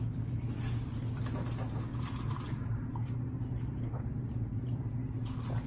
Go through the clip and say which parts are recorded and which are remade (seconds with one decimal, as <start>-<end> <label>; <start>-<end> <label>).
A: 0.0-1.9 recorded; 1.9-5.3 remade; 5.3-5.7 recorded

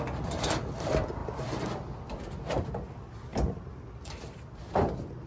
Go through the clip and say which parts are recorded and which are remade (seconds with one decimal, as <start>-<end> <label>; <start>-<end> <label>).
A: 0.0-5.3 recorded

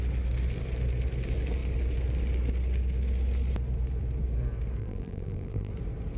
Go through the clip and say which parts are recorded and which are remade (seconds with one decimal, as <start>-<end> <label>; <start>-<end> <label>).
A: 0.0-4.8 recorded; 4.8-5.7 remade; 5.7-6.2 recorded

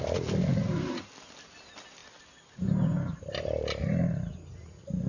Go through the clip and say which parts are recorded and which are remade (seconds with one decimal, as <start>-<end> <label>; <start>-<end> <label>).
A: 0.0-5.1 recorded

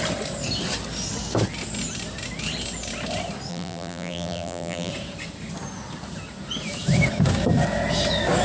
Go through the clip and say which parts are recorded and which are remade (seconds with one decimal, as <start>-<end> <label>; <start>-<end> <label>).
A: 0.0-3.5 recorded; 3.5-4.9 remade; 4.9-8.4 recorded

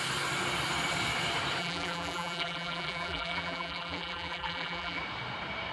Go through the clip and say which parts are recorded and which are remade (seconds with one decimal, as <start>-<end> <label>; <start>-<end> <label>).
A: 0.0-1.6 recorded; 1.6-5.0 remade; 5.0-5.7 recorded